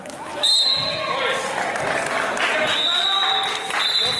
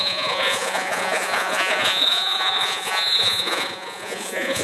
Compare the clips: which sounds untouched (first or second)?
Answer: first